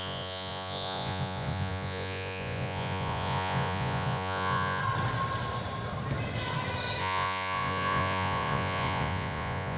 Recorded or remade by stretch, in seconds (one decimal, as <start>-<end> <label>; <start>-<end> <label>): 0.0-4.8 remade; 4.8-7.0 recorded; 7.0-9.8 remade